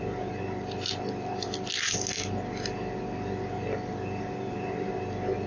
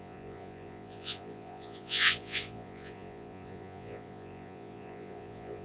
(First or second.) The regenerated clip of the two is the second